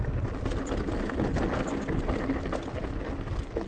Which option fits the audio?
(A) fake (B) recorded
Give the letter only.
B